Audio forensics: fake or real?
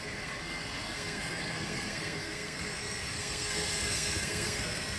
fake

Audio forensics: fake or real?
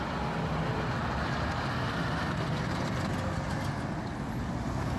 real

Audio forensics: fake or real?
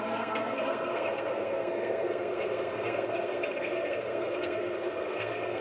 fake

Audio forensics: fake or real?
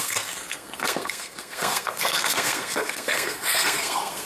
fake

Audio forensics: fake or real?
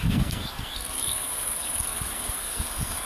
fake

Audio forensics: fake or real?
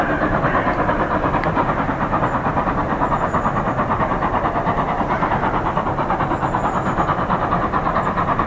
real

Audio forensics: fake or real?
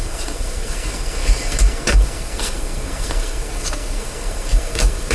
fake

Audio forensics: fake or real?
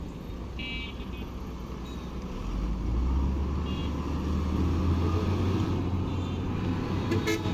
real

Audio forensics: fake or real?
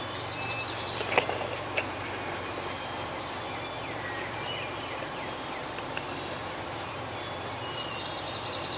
real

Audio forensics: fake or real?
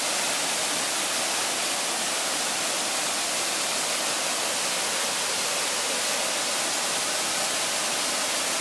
real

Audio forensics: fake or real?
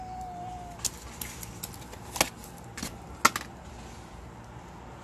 real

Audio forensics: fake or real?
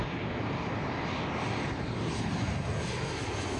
real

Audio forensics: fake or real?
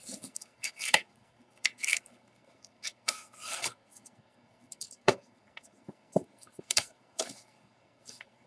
fake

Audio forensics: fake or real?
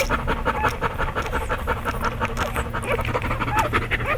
real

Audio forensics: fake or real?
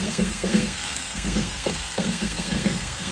fake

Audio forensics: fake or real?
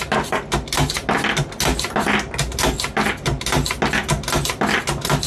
real